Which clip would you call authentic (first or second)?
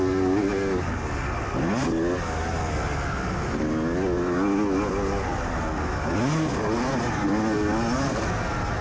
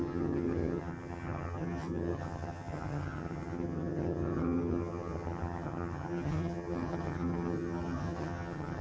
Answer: first